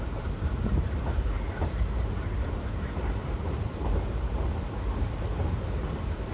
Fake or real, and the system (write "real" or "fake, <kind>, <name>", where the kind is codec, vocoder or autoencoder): fake, vocoder, BigVGAN v2